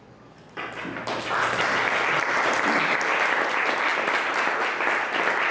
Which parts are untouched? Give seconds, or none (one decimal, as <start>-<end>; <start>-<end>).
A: 0.0-5.5